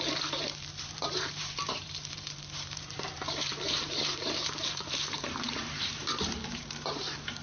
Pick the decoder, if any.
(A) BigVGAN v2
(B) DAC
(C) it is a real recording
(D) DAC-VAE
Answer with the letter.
A